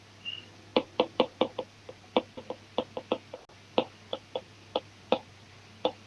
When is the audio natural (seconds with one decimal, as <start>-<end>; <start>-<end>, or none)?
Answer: 0.0-0.7; 2.2-4.1; 5.5-6.1

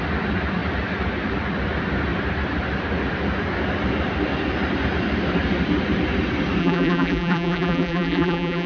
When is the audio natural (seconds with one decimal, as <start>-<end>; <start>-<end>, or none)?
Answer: 0.0-6.6

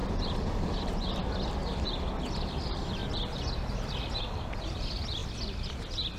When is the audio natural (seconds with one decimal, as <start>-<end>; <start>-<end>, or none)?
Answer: 3.0-4.1; 5.2-5.7

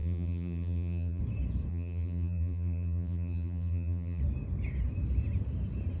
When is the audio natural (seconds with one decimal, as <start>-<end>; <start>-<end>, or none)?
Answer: 1.2-1.7; 4.2-6.0

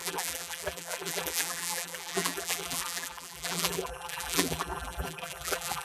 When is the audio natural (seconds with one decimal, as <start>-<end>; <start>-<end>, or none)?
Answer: none

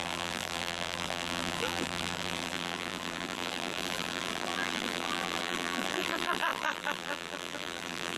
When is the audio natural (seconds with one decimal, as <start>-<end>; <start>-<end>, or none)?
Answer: none

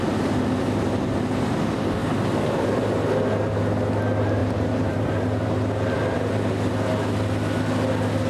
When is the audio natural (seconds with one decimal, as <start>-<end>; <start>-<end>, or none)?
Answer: 0.0-2.0; 2.9-4.4; 5.2-8.3

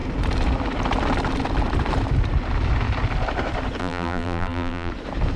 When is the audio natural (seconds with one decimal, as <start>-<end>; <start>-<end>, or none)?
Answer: 0.0-3.8; 4.9-5.4